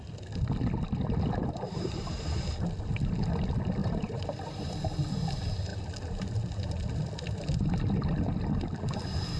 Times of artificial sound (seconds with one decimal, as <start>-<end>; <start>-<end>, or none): 1.4-2.5; 3.8-4.7